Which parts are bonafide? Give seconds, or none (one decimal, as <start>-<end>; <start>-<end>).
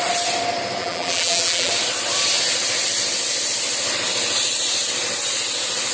0.0-0.8; 1.7-5.9